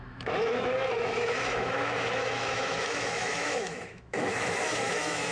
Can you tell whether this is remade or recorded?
remade